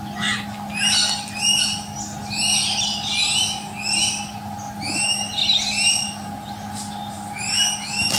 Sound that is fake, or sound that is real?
real